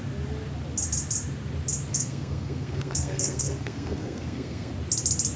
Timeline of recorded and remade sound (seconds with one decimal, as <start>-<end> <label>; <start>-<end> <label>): 0.0-1.9 recorded; 1.9-4.7 remade; 4.7-5.4 recorded